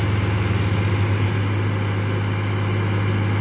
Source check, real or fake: real